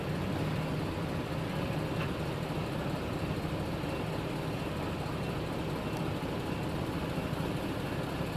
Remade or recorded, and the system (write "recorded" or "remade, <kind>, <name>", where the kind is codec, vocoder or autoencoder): recorded